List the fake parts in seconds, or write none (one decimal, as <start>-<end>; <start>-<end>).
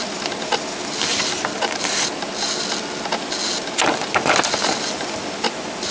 none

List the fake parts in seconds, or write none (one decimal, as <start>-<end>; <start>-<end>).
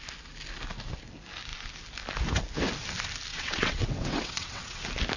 3.3-4.8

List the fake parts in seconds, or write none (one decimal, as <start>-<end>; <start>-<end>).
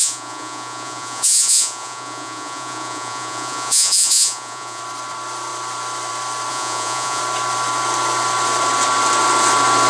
0.0-4.8; 6.5-7.2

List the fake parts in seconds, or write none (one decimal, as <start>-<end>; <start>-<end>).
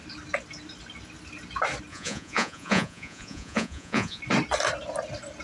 1.9-4.2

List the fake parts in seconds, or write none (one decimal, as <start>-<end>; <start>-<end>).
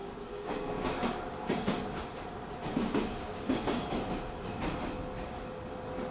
0.0-1.1; 2.7-4.2